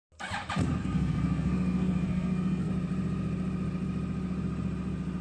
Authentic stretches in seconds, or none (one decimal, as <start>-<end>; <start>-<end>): 0.0-0.8; 2.7-5.2